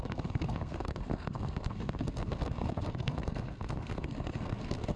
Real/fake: fake